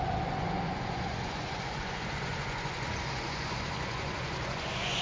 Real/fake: fake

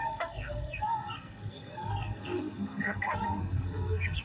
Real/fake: fake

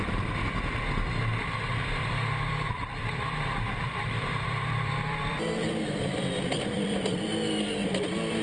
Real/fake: fake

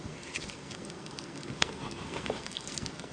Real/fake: fake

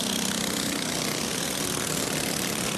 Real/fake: real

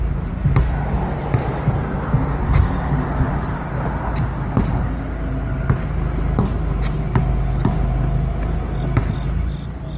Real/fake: real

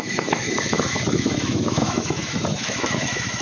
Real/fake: fake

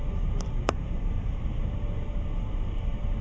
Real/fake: fake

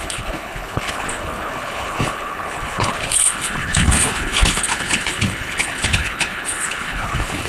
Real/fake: fake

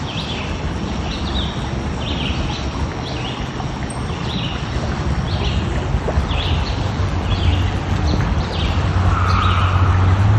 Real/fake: real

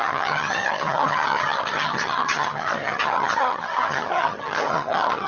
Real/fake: fake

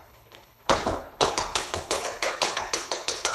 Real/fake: fake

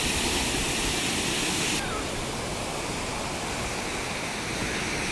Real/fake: real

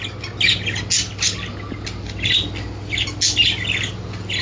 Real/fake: real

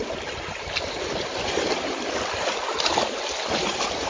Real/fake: real